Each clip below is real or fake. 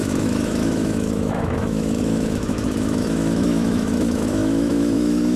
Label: fake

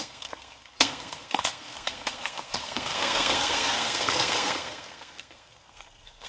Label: fake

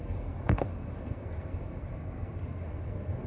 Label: fake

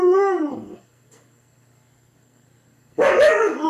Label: fake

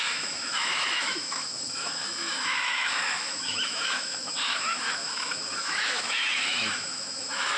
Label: fake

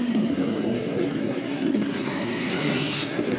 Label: fake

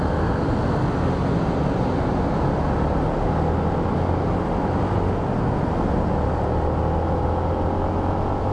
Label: real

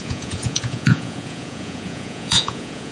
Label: fake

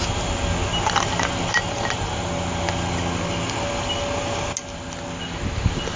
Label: real